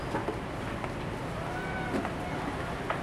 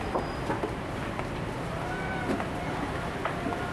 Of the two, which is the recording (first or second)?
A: first